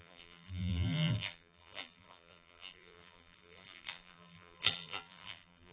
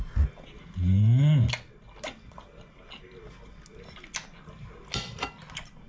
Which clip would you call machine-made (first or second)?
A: first